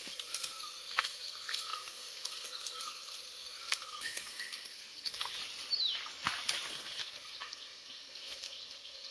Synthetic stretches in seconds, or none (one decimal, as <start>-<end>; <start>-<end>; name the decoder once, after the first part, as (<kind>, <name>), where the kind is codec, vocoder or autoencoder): 0.0-5.4 (codec, SNAC); 6.7-9.1